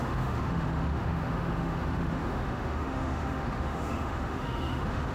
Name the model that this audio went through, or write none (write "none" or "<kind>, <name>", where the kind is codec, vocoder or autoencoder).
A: autoencoder, DAC-VAE